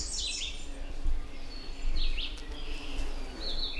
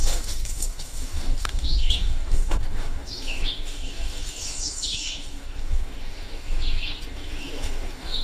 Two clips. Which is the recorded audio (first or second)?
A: first